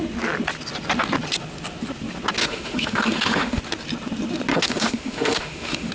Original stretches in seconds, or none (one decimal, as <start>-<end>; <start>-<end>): 0.0-2.4; 3.6-4.5